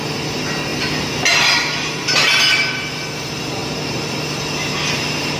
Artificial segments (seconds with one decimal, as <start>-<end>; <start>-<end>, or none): none